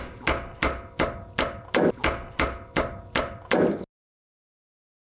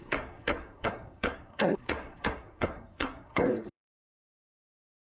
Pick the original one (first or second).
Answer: first